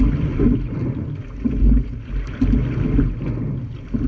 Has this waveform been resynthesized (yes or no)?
no